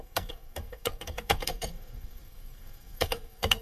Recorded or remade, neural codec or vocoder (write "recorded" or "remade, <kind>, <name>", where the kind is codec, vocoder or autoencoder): remade, codec, SNAC